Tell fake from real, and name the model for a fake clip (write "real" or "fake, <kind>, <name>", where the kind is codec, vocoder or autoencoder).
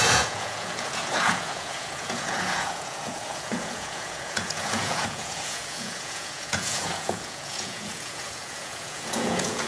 fake, vocoder, Vocos